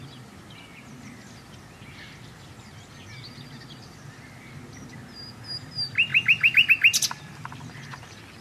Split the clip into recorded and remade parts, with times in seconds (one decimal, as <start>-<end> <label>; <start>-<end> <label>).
0.0-6.1 recorded; 6.1-6.7 remade; 6.7-8.4 recorded